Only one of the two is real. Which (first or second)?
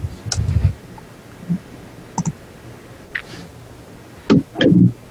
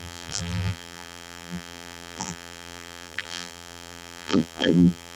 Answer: first